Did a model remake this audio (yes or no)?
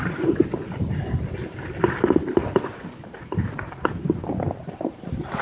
no